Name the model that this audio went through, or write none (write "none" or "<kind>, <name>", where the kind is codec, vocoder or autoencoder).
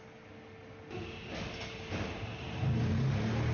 none